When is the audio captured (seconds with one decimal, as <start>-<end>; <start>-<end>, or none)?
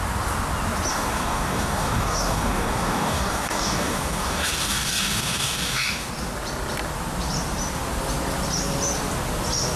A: 0.0-0.9; 6.1-9.8